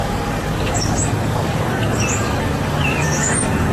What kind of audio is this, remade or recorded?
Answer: remade